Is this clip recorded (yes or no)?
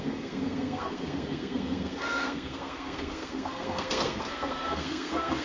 no